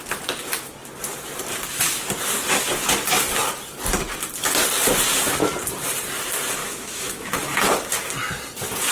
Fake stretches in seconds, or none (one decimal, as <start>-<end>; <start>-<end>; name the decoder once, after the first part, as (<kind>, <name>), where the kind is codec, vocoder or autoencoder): 6.6-7.3 (autoencoder, DAC-VAE)